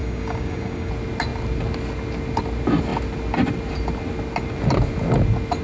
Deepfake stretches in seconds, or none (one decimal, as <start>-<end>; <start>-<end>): 0.0-0.9